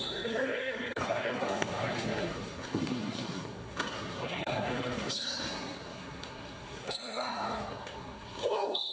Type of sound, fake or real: fake